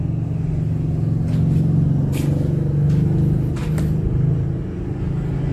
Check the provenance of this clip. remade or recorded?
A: recorded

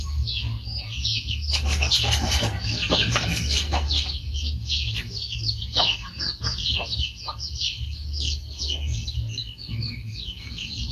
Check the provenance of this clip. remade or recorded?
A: remade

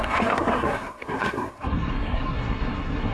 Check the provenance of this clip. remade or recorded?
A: remade